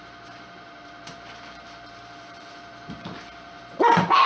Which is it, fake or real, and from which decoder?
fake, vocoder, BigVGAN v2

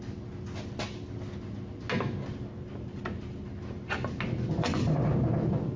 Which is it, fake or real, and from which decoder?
real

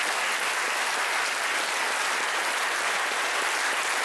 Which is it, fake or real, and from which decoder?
real